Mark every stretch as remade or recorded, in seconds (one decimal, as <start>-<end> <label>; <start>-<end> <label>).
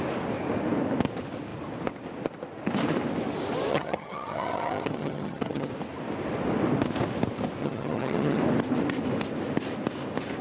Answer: 0.0-3.7 recorded; 3.7-5.7 remade; 5.7-7.6 recorded; 7.6-8.4 remade; 8.4-10.4 recorded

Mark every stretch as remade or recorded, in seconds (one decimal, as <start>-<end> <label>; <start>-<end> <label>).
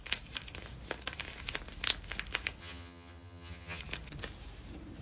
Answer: 0.0-2.6 recorded; 2.6-3.8 remade; 3.8-5.0 recorded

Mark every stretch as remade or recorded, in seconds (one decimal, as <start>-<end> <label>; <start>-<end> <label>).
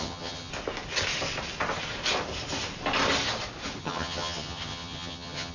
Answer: 0.0-0.5 remade; 0.5-3.8 recorded; 3.8-5.5 remade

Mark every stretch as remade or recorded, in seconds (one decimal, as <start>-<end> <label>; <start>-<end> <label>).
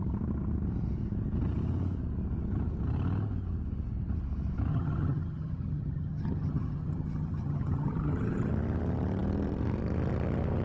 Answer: 0.0-4.7 recorded; 4.7-8.5 remade; 8.5-10.6 recorded